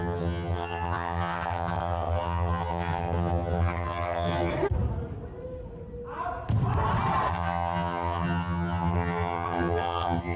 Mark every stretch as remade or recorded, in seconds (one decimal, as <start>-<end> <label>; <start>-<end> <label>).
0.0-4.5 remade; 4.5-7.3 recorded; 7.3-10.4 remade